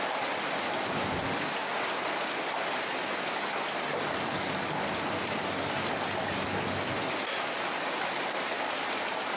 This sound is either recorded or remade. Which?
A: recorded